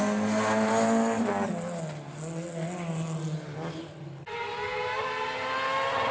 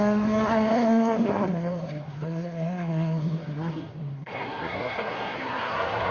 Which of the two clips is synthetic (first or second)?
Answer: second